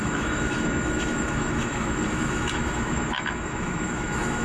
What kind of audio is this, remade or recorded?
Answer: remade